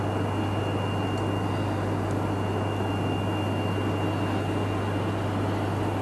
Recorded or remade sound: recorded